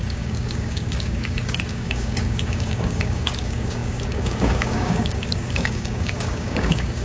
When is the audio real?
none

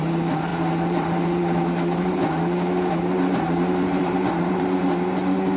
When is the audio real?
2.2-2.9; 4.8-5.6

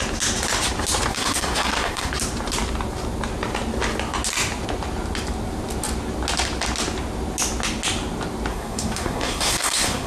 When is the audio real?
0.0-1.1; 2.1-8.5

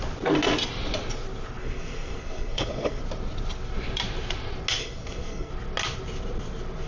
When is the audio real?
0.0-1.6; 3.0-4.8; 5.5-6.9

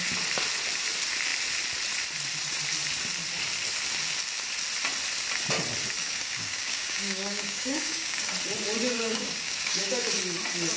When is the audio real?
0.0-6.0; 8.3-8.8; 10.1-10.8

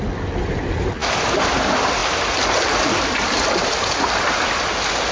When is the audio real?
0.0-5.1